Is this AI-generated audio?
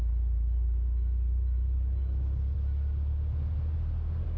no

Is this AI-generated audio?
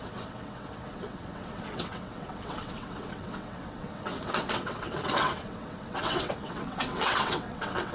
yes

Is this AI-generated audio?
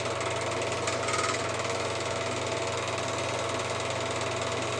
no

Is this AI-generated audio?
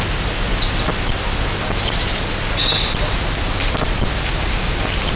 no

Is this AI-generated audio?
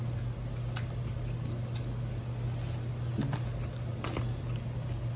no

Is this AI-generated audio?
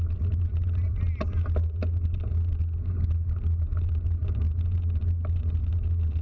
no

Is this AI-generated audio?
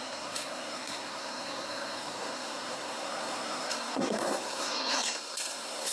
yes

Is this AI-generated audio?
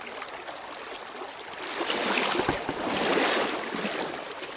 no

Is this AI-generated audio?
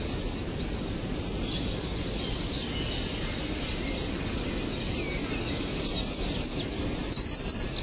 no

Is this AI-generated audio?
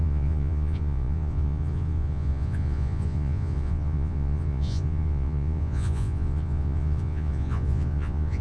yes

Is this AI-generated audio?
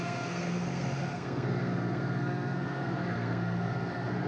yes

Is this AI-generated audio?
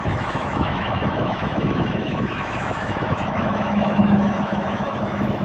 yes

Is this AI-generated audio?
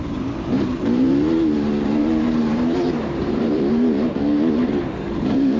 yes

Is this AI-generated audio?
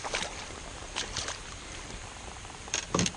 yes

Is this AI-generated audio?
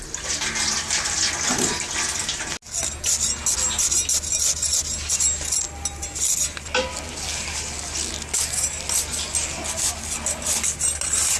no